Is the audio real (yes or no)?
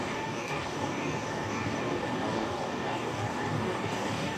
no